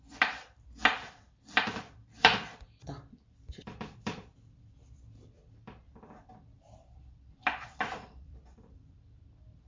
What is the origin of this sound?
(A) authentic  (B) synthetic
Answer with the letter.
B